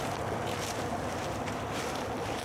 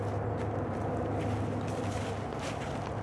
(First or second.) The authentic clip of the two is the second